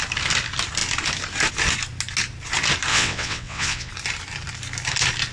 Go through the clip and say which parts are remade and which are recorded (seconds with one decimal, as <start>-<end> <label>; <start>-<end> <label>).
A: 0.0-2.9 recorded; 2.9-3.9 remade; 3.9-5.3 recorded